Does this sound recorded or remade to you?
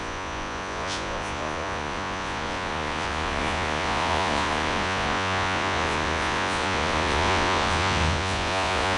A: remade